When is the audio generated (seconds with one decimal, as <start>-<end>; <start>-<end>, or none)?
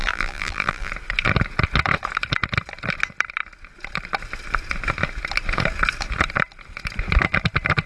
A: 0.0-0.9